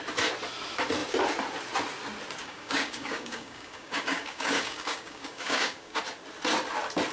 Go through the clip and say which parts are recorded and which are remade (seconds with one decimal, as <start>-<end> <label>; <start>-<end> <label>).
0.0-2.4 recorded; 2.4-6.0 remade; 6.0-7.1 recorded